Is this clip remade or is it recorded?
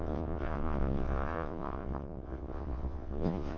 remade